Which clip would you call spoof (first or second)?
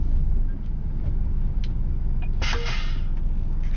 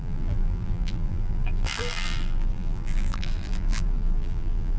second